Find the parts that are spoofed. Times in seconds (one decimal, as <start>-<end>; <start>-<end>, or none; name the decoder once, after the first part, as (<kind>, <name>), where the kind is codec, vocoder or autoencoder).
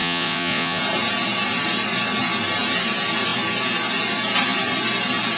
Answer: 0.0-0.8 (vocoder, Vocos)